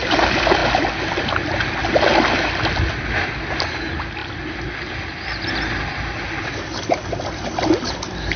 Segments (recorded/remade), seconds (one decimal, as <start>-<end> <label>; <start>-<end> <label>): 0.0-8.4 recorded

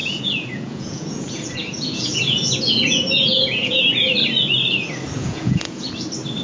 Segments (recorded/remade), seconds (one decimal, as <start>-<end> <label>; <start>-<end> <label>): 0.0-3.8 remade; 3.8-5.2 recorded; 5.2-5.9 remade; 5.9-6.4 recorded

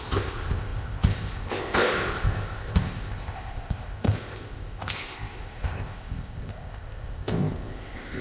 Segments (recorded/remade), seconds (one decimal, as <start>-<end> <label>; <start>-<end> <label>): 0.0-8.2 remade

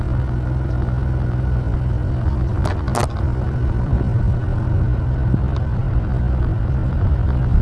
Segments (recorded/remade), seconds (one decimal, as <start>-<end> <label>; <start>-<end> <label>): 0.0-7.6 recorded

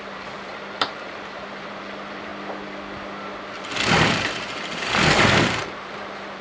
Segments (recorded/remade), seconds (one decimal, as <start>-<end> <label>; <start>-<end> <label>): 0.0-2.3 remade; 2.3-5.1 recorded; 5.1-6.4 remade

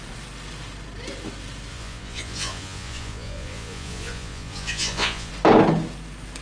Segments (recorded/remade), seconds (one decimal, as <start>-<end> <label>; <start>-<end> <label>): 0.0-1.7 recorded; 1.7-5.3 remade; 5.3-6.4 recorded

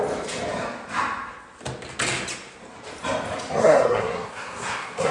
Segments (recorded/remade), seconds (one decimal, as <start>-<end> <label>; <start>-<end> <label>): 0.0-3.6 recorded; 3.6-5.1 remade

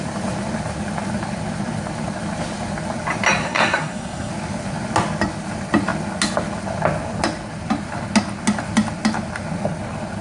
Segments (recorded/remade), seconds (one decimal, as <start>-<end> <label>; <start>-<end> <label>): 0.0-3.4 recorded; 3.4-4.3 remade; 4.3-10.2 recorded